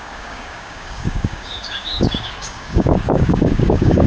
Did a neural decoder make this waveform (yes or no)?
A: yes